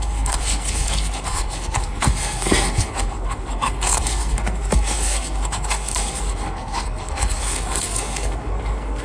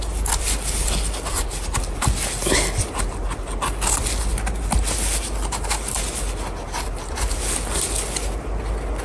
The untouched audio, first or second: second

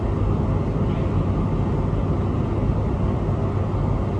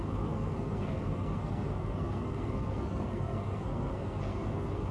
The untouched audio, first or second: first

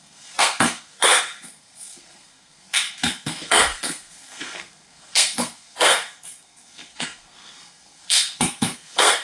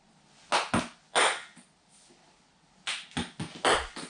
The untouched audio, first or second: second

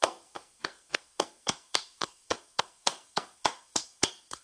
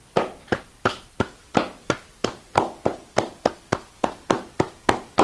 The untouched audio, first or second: second